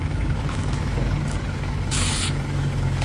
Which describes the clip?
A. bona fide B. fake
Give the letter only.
B